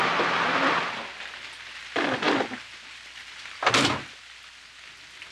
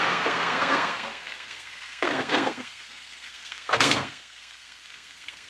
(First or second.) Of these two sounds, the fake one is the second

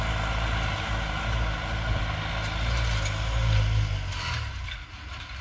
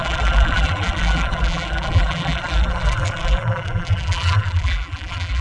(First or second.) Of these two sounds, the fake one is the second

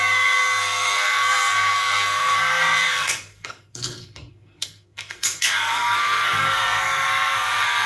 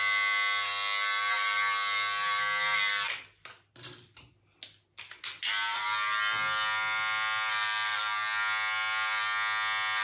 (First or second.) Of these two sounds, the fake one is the first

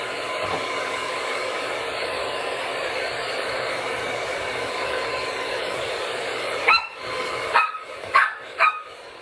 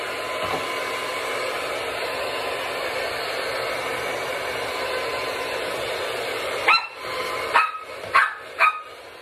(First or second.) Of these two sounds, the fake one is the first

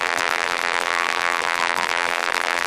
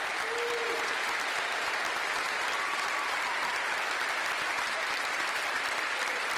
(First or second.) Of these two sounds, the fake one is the first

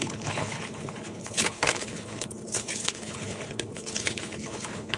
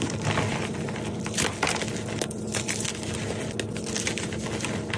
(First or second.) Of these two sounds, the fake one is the first